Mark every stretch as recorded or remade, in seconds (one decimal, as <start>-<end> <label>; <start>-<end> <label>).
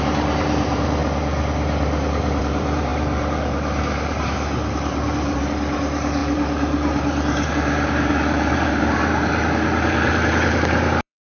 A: 0.0-1.0 remade; 1.0-2.4 recorded; 2.4-11.3 remade